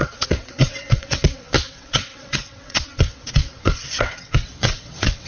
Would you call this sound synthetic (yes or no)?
yes